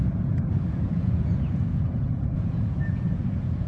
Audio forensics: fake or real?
fake